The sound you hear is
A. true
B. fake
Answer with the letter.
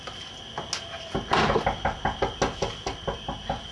A